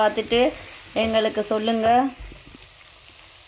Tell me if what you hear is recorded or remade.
recorded